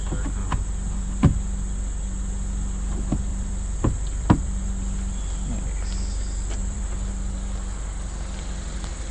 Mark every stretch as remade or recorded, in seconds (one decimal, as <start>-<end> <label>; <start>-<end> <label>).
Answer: 0.0-3.3 recorded; 3.3-4.6 remade; 4.6-6.6 recorded; 6.6-7.1 remade; 7.1-9.1 recorded